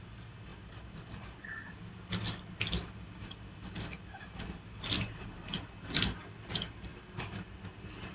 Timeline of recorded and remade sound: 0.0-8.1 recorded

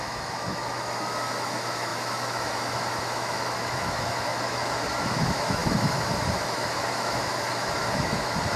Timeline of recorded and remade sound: 0.0-8.6 remade

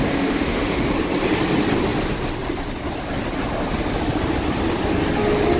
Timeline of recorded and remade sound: 0.0-0.9 remade; 0.9-5.6 recorded

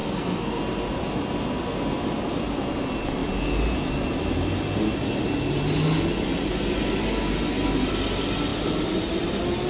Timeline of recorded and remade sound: 0.0-0.6 remade; 0.6-9.7 recorded

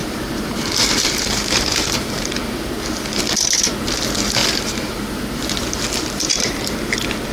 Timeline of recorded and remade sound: 0.0-3.2 remade; 3.2-4.4 recorded; 4.4-6.8 remade; 6.8-7.3 recorded

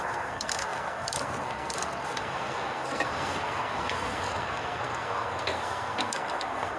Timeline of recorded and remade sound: 0.0-6.8 remade